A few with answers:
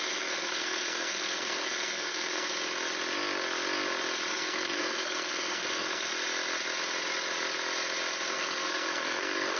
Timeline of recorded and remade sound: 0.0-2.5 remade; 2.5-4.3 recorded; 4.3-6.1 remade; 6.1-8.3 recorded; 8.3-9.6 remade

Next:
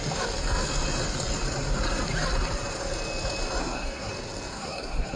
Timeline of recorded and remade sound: 0.0-3.6 recorded; 3.6-4.1 remade; 4.1-4.5 recorded; 4.5-5.2 remade

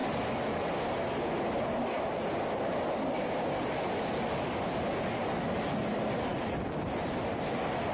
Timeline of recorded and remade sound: 0.0-7.9 recorded